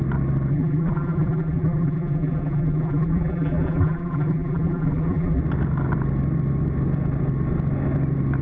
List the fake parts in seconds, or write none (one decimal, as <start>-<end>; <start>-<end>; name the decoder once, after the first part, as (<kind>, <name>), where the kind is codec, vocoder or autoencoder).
0.5-5.4 (vocoder, BigVGAN v2)